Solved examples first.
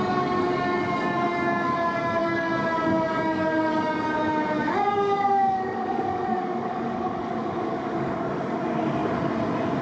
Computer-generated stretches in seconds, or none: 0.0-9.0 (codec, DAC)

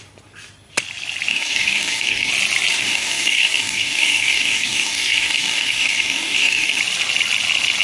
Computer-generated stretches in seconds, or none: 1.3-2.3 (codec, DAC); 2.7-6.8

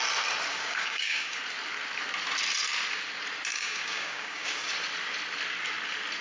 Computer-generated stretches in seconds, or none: 0.5-1.4 (codec, DAC); 3.5-4.7

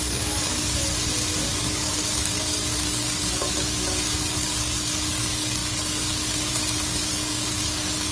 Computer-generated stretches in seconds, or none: 0.0-0.8 (codec, DAC); 1.5-8.1

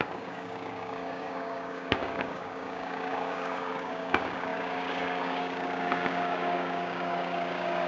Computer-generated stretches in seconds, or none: 0.0-7.9 (codec, DAC)

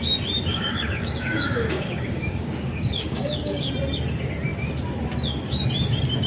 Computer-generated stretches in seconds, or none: 0.5-3.7 (codec, DAC)

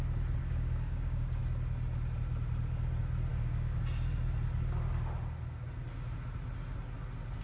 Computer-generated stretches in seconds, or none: 0.4-1.4 (codec, DAC); 3.3-3.8

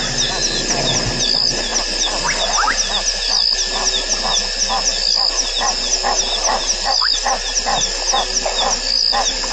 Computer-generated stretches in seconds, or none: none